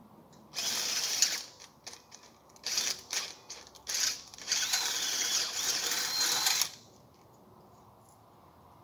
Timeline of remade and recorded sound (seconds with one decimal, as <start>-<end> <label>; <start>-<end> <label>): 0.0-4.3 recorded; 4.3-7.8 remade; 7.8-8.8 recorded